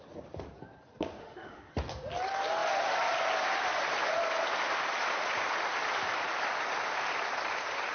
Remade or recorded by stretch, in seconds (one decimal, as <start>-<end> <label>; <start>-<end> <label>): 0.0-1.2 recorded; 1.2-1.7 remade; 1.7-7.9 recorded